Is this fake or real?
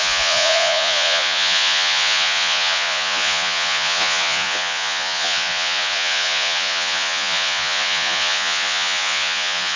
fake